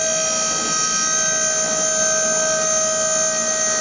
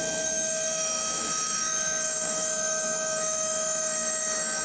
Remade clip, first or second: second